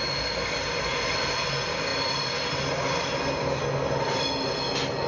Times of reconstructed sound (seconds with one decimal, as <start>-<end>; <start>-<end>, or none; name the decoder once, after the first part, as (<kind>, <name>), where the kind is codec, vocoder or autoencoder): none